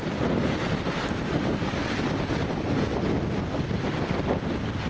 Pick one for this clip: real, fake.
real